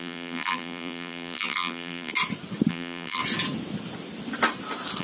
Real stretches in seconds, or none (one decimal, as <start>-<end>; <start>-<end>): 2.1-2.7; 3.2-5.0